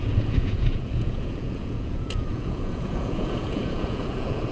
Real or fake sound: fake